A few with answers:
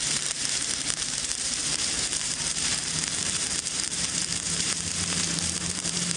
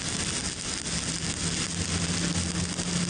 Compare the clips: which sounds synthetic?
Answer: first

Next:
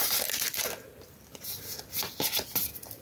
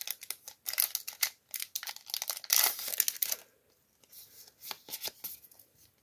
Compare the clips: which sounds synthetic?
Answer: first